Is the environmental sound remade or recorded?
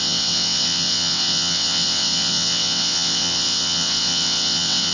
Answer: remade